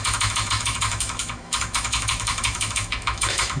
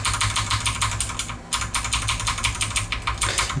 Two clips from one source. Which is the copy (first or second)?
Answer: first